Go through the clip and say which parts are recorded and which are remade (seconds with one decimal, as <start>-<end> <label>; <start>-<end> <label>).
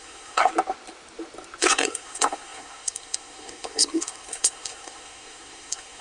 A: 0.0-0.5 remade; 0.5-1.6 recorded; 1.6-6.0 remade